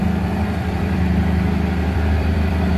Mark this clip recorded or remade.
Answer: remade